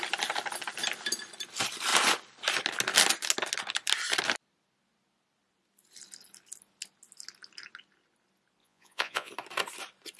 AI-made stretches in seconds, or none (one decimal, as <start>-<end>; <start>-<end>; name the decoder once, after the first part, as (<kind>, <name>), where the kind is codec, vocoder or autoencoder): 8.6-9.3 (vocoder, Vocos)